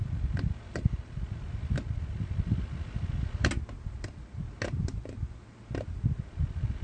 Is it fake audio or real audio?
real